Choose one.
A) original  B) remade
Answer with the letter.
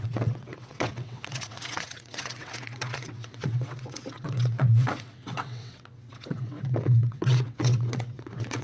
B